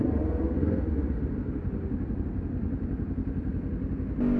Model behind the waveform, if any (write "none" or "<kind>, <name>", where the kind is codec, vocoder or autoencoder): none